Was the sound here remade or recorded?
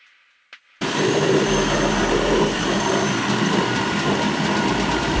remade